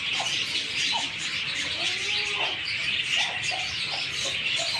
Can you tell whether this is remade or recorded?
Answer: recorded